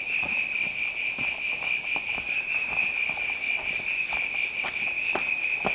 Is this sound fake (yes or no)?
no